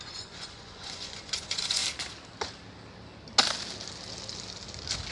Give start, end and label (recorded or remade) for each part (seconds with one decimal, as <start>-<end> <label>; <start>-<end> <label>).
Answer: 0.0-1.8 remade; 1.8-5.1 recorded